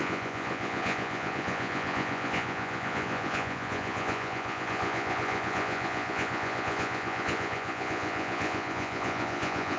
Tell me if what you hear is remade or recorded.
remade